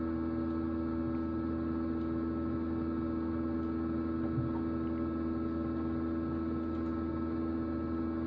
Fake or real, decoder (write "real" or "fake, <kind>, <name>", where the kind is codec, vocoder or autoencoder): real